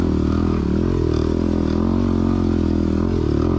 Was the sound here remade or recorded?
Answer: recorded